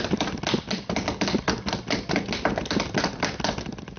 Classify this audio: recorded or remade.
recorded